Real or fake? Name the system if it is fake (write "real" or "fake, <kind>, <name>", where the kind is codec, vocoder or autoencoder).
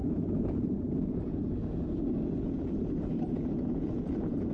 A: fake, vocoder, Vocos